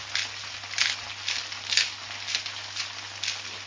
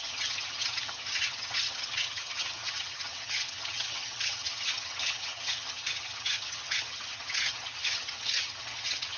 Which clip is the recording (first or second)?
first